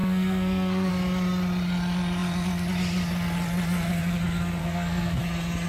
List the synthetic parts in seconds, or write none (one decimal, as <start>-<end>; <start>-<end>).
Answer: 0.0-0.9; 4.6-5.2